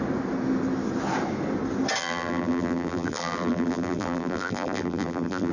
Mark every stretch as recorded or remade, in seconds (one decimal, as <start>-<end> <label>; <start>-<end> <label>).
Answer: 0.0-2.0 recorded; 2.0-5.5 remade